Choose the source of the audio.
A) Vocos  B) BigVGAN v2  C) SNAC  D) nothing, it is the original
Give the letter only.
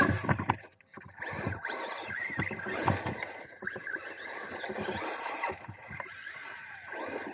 D